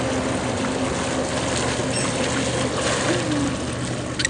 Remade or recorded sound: recorded